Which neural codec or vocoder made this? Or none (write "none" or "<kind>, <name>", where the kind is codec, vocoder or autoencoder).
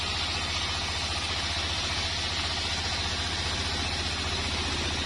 none